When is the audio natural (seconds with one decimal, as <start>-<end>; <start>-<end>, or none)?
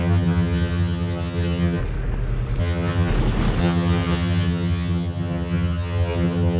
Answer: 1.8-2.6; 3.1-3.6